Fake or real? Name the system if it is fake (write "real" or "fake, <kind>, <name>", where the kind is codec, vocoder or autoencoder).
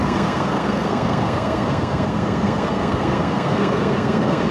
fake, codec, SNAC